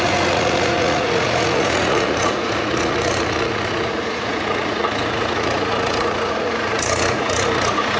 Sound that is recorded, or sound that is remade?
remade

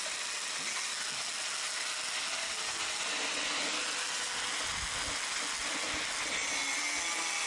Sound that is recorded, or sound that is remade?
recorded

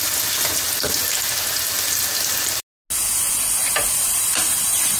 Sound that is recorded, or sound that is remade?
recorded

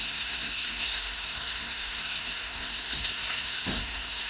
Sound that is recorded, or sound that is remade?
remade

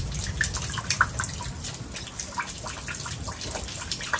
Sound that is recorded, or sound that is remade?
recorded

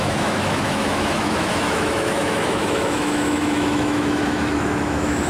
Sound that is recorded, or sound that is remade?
remade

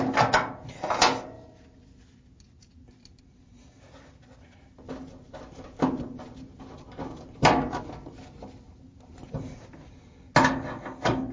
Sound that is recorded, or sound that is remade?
recorded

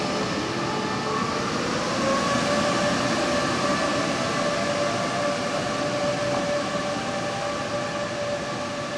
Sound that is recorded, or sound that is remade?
recorded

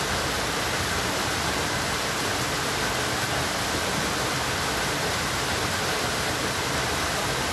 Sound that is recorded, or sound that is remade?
recorded